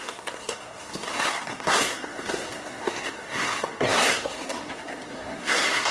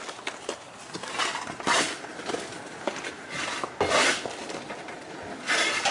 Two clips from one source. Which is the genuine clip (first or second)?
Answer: second